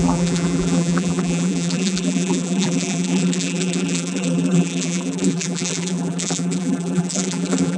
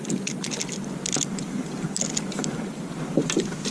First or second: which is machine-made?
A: first